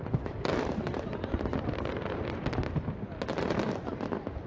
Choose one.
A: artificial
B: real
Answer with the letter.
B